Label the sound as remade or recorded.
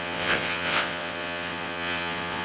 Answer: remade